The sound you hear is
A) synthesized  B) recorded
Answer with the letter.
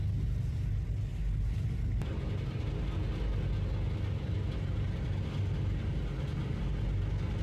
B